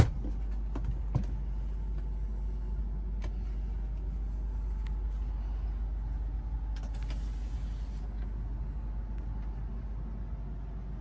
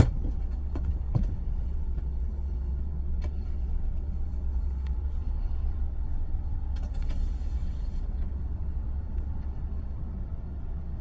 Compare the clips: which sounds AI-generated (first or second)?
second